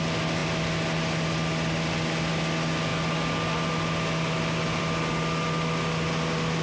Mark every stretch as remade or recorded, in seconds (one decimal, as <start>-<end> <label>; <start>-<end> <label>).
0.0-6.6 recorded